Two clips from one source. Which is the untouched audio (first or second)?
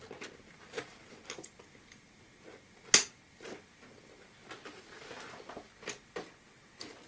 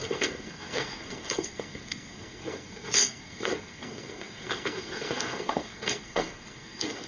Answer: first